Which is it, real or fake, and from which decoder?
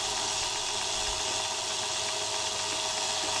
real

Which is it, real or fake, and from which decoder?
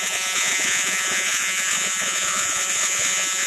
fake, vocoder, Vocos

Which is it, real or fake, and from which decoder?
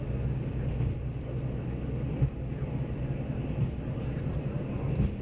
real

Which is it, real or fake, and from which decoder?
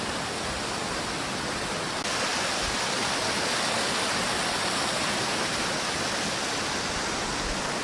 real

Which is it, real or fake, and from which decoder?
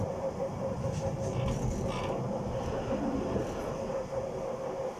real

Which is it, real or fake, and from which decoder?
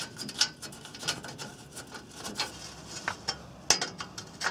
real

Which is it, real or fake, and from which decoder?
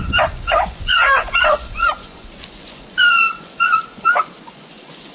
fake, vocoder, Vocos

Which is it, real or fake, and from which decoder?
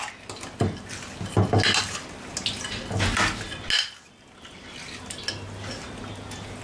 real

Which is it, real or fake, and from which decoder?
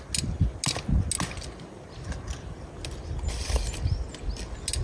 real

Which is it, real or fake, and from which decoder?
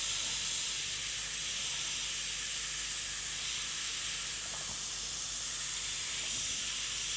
real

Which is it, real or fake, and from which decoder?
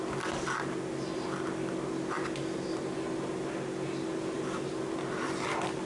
real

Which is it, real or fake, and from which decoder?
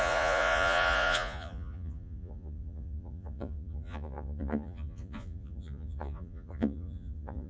fake, vocoder, Vocos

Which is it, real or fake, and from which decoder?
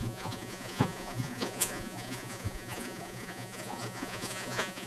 fake, vocoder, Vocos